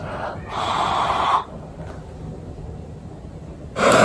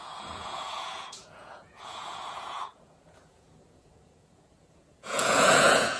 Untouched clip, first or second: first